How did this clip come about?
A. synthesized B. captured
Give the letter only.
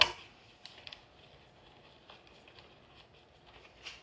B